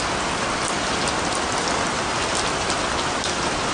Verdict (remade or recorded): recorded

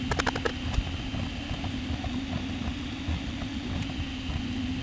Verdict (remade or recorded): recorded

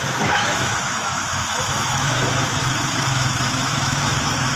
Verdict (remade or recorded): remade